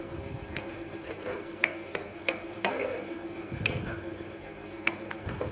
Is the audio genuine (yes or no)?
no